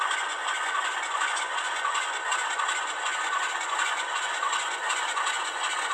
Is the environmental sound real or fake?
fake